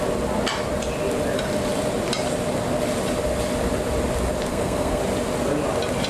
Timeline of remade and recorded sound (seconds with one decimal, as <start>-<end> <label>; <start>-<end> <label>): 0.0-4.5 recorded; 4.5-5.0 remade; 5.0-6.1 recorded